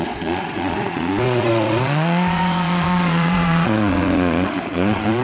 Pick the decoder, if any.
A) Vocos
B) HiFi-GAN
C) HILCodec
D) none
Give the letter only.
A